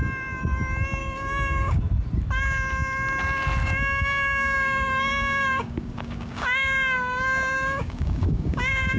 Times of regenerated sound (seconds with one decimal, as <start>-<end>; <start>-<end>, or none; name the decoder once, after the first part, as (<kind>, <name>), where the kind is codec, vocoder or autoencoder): 1.0-1.8 (codec, DAC); 3.6-9.0

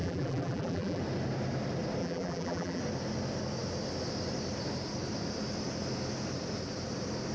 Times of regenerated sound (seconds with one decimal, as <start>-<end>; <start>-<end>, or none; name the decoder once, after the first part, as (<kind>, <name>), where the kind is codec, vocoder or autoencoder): 0.0-1.0 (vocoder, BigVGAN v2); 2.0-2.8

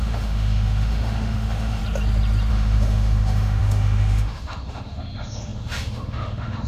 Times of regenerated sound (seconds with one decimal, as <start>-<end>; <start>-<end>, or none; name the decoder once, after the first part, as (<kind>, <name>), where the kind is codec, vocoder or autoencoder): 0.0-1.8 (autoencoder, DAC-VAE); 2.5-6.7

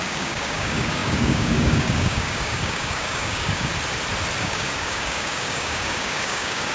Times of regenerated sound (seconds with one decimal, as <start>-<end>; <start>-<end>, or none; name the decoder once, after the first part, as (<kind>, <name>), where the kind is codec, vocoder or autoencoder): 0.0-3.7 (codec, DAC); 4.4-6.7

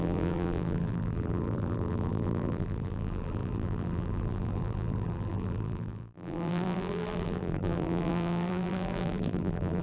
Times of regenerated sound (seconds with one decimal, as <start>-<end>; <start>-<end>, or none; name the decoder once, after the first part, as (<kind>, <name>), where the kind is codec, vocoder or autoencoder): 0.0-9.8 (vocoder, BigVGAN v2)

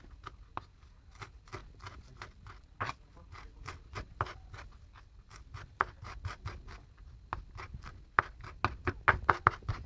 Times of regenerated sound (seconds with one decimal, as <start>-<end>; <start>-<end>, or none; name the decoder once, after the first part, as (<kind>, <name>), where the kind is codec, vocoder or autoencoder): none

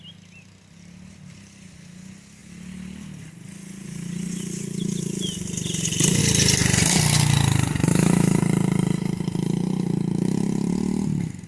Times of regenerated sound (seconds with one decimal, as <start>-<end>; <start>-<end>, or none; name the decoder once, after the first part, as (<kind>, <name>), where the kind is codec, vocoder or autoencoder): 7.9-8.4 (autoencoder, DAC-VAE)

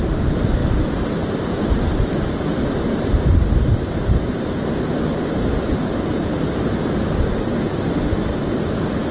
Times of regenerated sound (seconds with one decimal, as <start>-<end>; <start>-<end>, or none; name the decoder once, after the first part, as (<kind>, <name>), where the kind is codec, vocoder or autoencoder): 0.6-1.9 (vocoder, BigVGAN v2); 2.5-6.5